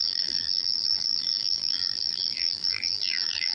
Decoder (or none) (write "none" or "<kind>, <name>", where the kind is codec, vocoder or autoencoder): vocoder, BigVGAN v2